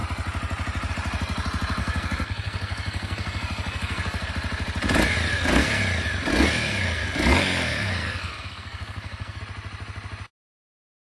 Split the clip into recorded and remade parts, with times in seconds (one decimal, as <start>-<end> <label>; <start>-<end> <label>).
0.0-1.8 recorded; 1.8-4.3 remade; 4.3-5.3 recorded; 5.3-5.8 remade; 5.8-6.3 recorded; 6.3-9.4 remade; 9.4-11.1 recorded